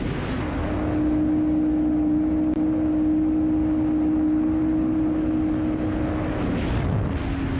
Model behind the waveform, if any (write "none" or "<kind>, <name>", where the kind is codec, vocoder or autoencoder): none